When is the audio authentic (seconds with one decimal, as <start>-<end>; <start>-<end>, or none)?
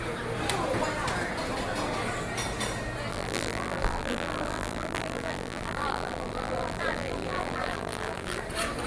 0.0-3.1; 8.4-8.9